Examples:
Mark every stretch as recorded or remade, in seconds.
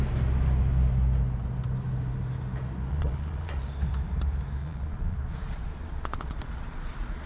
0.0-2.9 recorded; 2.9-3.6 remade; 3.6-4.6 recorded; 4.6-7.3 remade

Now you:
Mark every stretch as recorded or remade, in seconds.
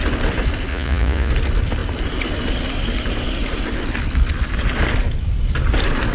0.0-0.7 recorded; 0.7-1.3 remade; 1.3-6.1 recorded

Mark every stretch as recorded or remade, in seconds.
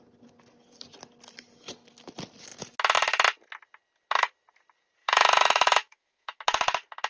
0.0-5.0 recorded; 5.0-6.4 remade; 6.4-7.1 recorded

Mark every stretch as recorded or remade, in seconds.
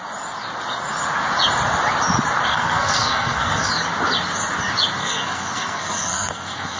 0.0-2.5 recorded; 2.5-3.7 remade; 3.7-5.0 recorded; 5.0-6.8 remade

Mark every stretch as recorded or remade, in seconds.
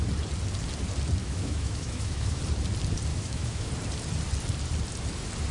0.0-1.2 recorded; 1.2-2.4 remade; 2.4-3.1 recorded; 3.1-3.7 remade; 3.7-5.5 recorded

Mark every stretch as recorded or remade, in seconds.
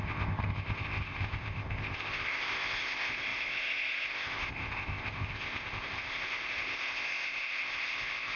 0.0-8.4 remade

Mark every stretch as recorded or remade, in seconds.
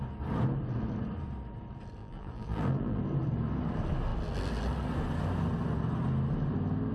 0.0-2.0 recorded; 2.0-3.0 remade; 3.0-6.9 recorded